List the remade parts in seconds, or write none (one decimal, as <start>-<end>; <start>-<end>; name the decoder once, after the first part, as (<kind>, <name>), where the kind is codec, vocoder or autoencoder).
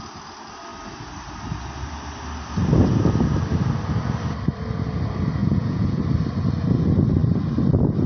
5.4-6.0 (vocoder, Vocos)